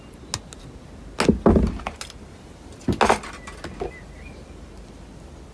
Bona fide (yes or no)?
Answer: yes